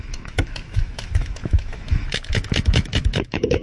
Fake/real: fake